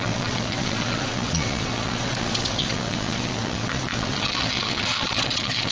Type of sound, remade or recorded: remade